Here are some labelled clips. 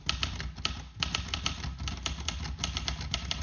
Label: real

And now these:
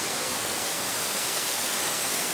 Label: fake